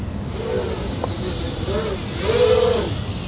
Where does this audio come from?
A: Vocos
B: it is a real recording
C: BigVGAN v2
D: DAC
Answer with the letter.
B